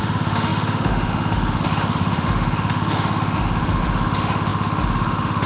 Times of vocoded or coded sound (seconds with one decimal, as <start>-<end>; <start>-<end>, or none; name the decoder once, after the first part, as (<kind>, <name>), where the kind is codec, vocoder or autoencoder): 0.0-5.5 (autoencoder, DAC-VAE)